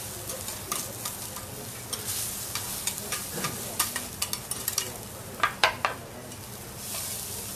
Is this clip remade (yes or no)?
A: no